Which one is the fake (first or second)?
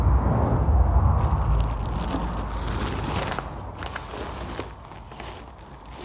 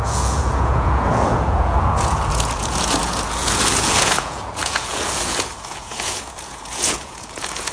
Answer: second